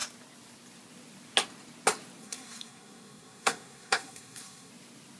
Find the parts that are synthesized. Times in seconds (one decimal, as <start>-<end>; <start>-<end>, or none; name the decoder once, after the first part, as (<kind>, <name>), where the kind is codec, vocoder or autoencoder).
2.2-4.7 (codec, SNAC)